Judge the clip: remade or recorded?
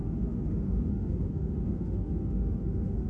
remade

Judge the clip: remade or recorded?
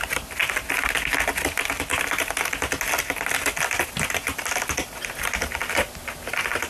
recorded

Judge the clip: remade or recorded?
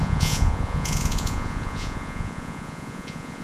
remade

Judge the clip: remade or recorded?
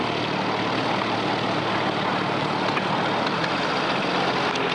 recorded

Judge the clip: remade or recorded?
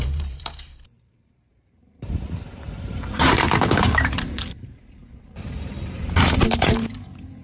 remade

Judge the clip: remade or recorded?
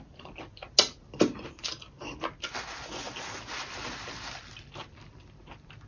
recorded